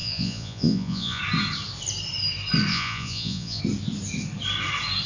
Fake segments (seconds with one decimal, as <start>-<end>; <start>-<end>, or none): 0.0-1.2; 2.7-3.6